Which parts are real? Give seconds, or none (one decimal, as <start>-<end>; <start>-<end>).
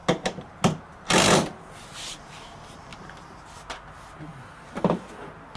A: 0.0-5.6